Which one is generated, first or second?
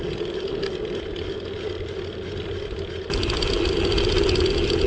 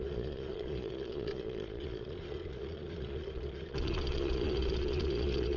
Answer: second